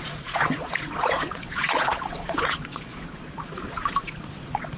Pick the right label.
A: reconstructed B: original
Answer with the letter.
A